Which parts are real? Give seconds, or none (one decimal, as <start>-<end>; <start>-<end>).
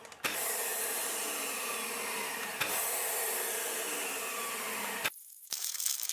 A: 0.0-5.2